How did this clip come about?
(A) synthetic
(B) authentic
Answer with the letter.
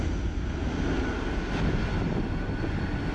B